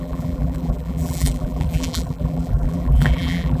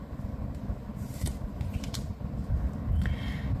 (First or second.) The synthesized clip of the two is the first